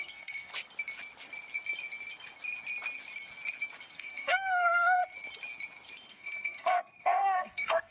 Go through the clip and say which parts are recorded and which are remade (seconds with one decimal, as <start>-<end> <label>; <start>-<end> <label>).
0.0-0.5 remade; 0.5-3.9 recorded; 3.9-5.0 remade; 5.0-6.1 recorded; 6.1-7.9 remade